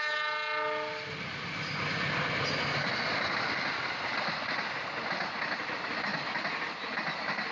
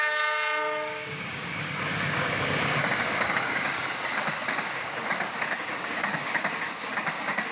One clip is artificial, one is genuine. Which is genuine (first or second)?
first